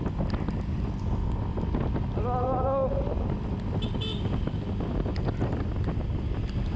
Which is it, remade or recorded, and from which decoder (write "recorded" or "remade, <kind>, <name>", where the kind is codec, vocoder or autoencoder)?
recorded